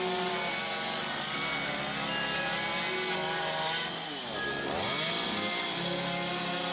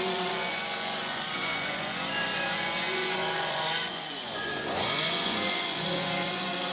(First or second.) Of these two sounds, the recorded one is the first